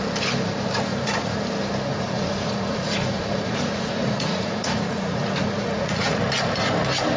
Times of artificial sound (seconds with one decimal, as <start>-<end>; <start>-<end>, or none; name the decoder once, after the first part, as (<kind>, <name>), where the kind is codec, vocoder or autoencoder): 0.9-1.4 (vocoder, Vocos); 1.9-6.2